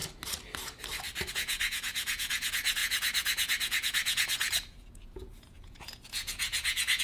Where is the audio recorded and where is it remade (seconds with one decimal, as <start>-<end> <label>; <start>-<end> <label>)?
0.0-1.3 recorded; 1.3-7.0 remade